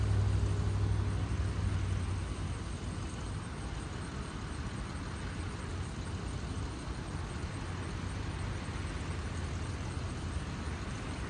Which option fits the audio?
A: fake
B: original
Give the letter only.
B